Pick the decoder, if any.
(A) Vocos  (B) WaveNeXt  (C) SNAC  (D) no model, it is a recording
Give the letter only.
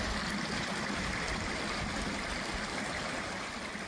D